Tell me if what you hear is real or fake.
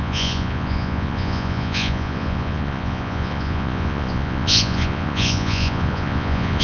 fake